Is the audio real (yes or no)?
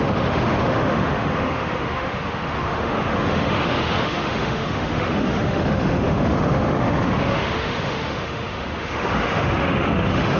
no